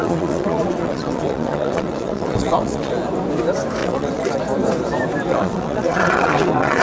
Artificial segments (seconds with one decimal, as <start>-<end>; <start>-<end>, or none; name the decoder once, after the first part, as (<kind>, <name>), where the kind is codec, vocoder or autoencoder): 0.0-2.9 (vocoder, WaveNeXt); 3.8-4.4; 5.3-6.8